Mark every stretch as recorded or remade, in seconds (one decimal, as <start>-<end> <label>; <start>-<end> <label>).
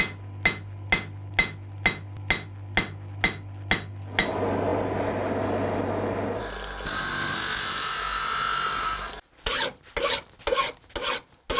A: 0.0-11.6 recorded